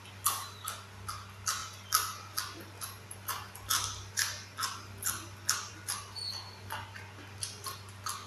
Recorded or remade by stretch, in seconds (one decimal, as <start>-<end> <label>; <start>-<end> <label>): 0.0-8.3 recorded

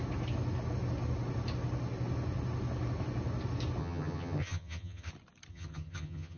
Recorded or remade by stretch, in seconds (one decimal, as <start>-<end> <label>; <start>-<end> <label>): 0.0-3.8 recorded; 3.8-5.1 remade; 5.1-5.5 recorded; 5.5-6.4 remade

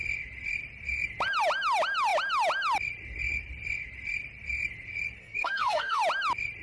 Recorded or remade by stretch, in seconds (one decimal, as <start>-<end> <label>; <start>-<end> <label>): 0.0-5.2 recorded; 5.2-6.0 remade; 6.0-6.6 recorded

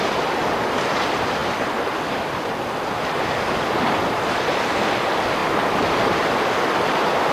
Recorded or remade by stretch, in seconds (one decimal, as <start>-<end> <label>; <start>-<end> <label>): 0.0-7.3 recorded